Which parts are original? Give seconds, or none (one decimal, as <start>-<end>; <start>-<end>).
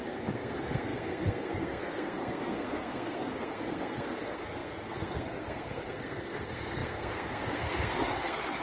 none